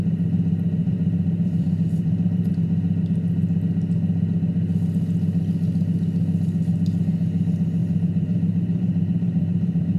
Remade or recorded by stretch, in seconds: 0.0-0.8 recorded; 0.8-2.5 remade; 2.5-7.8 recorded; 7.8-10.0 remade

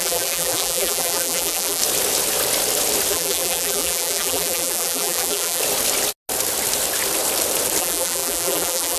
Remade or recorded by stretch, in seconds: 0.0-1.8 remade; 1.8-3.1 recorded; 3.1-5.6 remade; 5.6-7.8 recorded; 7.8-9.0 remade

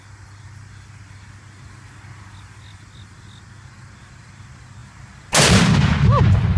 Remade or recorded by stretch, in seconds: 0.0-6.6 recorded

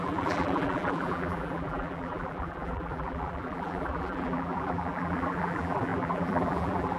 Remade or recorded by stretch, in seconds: 0.0-7.0 remade

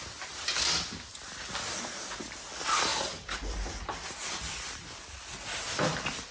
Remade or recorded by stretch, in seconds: 0.0-6.3 recorded